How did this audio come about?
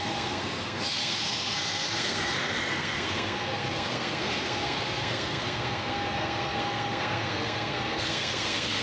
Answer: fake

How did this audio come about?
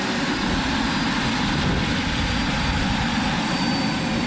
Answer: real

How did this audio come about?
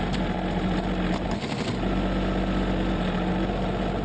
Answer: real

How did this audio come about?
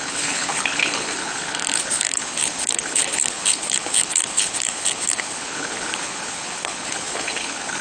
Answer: fake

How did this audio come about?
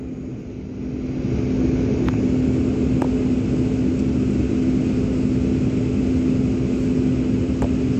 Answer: real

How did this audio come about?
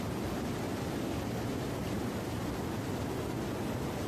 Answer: real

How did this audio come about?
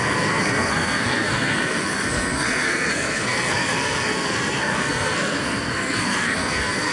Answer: fake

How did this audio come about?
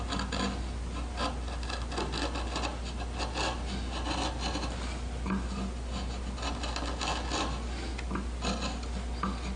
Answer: real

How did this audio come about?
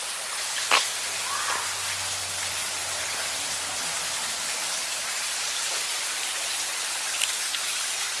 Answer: real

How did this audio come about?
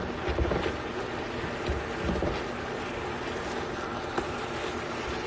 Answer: real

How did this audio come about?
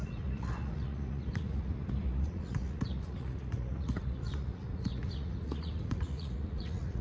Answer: fake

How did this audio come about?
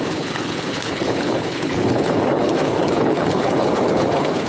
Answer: fake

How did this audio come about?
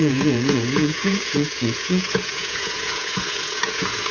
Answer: fake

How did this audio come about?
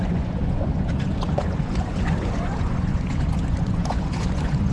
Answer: fake